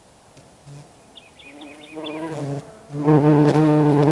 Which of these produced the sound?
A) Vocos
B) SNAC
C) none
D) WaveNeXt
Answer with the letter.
C